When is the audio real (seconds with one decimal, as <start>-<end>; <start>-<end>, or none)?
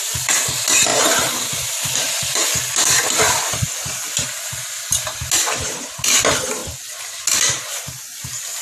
0.9-1.4; 2.4-5.9; 6.6-8.6